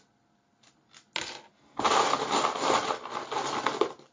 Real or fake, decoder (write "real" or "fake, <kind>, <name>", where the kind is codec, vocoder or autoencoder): real